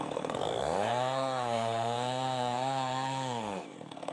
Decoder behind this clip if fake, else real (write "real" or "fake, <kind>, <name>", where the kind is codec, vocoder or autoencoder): fake, codec, SNAC